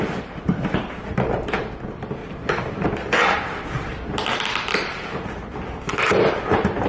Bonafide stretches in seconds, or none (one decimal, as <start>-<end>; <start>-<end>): 0.0-0.5; 1.6-2.2; 6.3-6.9